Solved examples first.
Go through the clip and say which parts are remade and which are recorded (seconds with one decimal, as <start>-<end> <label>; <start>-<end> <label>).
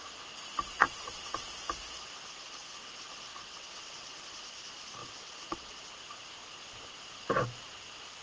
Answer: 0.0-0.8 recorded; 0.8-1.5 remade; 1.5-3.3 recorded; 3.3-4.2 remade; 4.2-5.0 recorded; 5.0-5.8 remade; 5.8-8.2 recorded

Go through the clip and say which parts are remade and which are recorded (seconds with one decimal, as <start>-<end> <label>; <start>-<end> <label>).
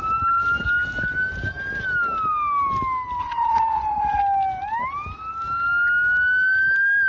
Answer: 0.0-3.2 recorded; 3.2-4.2 remade; 4.2-7.1 recorded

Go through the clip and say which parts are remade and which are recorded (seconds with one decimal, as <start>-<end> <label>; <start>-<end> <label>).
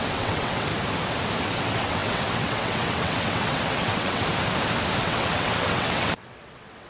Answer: 0.0-0.7 remade; 0.7-1.4 recorded; 1.4-4.2 remade; 4.2-5.0 recorded; 5.0-6.9 remade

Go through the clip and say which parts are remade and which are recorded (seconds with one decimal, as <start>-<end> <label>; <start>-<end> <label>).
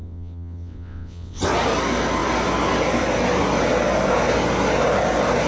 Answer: 0.0-1.4 remade; 1.4-5.5 recorded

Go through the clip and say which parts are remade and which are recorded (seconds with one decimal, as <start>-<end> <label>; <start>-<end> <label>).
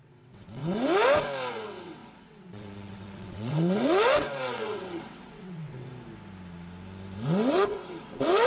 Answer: 0.0-0.6 remade; 0.6-1.5 recorded; 1.5-5.9 remade; 5.9-7.5 recorded; 7.5-8.5 remade